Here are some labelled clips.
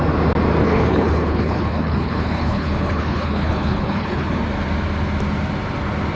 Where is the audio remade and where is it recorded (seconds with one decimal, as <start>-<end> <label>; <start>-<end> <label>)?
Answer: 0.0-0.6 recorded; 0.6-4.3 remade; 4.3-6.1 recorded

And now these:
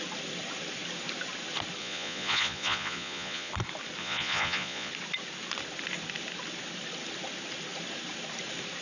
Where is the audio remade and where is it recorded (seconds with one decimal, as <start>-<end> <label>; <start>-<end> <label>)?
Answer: 0.0-1.8 recorded; 1.8-3.5 remade; 3.5-4.0 recorded; 4.0-4.9 remade; 4.9-8.8 recorded

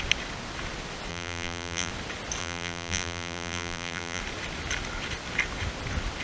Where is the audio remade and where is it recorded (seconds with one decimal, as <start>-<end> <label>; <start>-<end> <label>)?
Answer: 0.0-1.1 recorded; 1.1-1.9 remade; 1.9-2.4 recorded; 2.4-4.2 remade; 4.2-6.2 recorded